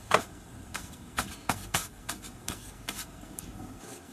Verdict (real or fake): fake